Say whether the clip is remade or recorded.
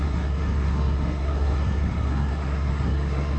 remade